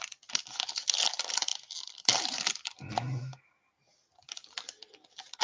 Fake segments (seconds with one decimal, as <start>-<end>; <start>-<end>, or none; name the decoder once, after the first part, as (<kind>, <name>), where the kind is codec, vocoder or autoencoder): none